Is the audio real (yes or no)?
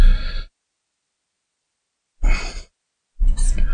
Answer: yes